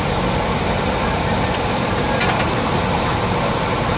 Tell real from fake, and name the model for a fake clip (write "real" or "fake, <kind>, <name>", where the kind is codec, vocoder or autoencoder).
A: fake, vocoder, BigVGAN v2